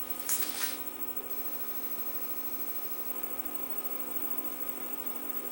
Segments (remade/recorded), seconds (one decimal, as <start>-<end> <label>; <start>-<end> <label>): 0.0-1.3 remade; 1.3-3.1 recorded; 3.1-5.5 remade